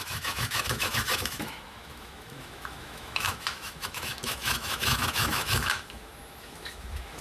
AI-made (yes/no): yes